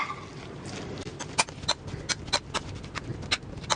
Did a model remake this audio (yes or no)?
no